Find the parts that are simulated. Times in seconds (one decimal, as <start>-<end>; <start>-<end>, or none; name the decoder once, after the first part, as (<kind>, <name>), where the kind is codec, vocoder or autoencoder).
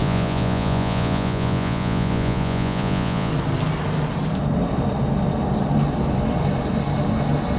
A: 0.0-3.3 (vocoder, Vocos)